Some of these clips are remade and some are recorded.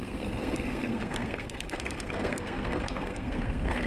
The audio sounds remade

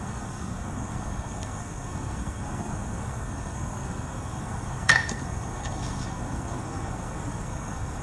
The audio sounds remade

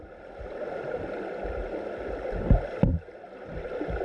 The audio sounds recorded